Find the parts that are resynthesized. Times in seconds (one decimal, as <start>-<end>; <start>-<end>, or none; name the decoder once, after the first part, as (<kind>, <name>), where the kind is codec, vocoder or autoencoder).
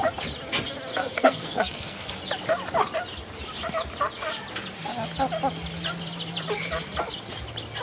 0.9-2.1 (codec, SNAC)